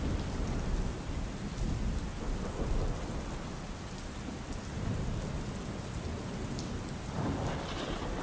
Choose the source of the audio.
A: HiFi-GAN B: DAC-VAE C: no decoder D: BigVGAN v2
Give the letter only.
C